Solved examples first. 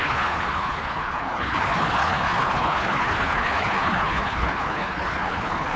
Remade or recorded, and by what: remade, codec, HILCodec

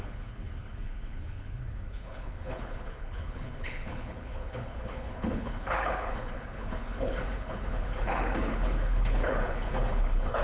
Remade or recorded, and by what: remade, codec, HILCodec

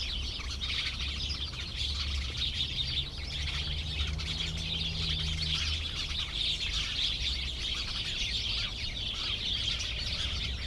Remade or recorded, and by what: recorded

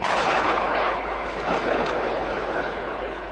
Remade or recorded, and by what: remade, codec, HILCodec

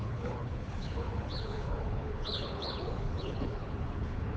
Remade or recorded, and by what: remade, codec, HILCodec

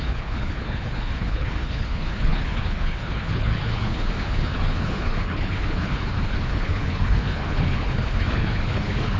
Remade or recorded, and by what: remade, codec, HILCodec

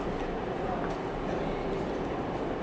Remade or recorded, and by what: recorded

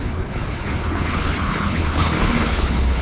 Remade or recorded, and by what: remade, codec, HILCodec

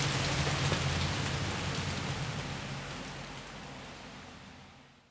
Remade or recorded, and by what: recorded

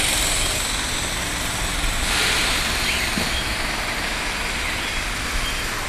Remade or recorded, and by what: recorded